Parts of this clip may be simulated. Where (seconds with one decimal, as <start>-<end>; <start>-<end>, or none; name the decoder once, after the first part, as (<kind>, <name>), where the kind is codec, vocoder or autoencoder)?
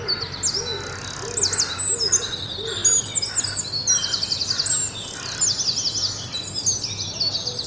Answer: none